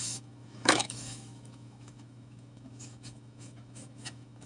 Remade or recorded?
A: remade